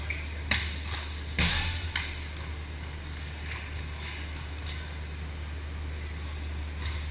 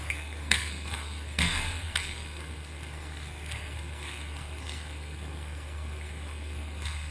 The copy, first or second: second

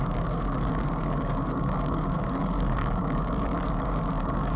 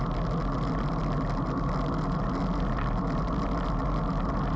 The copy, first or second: first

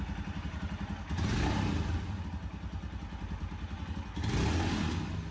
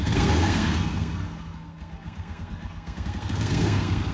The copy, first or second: second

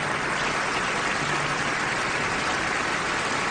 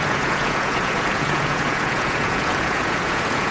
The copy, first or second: second